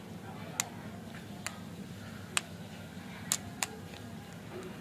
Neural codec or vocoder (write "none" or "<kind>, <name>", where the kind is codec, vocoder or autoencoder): none